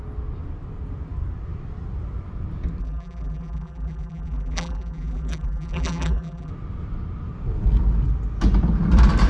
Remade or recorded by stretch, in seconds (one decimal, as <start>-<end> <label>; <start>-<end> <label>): 0.0-2.8 recorded; 2.8-6.5 remade; 6.5-9.3 recorded